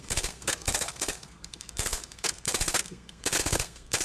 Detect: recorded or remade remade